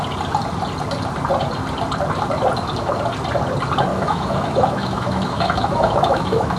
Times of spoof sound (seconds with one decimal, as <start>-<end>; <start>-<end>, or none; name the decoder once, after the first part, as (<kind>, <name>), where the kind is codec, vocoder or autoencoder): 3.9-6.6 (autoencoder, DAC-VAE)